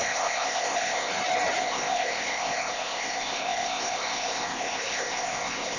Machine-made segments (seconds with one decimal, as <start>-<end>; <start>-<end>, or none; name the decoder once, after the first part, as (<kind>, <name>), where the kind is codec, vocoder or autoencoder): 0.0-1.1 (codec, ZipCodec); 1.6-5.8